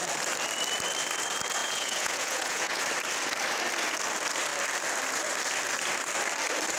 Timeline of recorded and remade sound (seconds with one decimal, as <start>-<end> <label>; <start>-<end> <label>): 0.0-1.6 recorded; 1.6-2.8 remade; 2.8-6.8 recorded